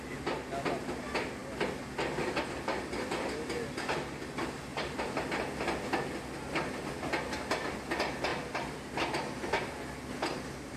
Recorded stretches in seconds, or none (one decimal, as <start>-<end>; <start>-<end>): 0.0-10.8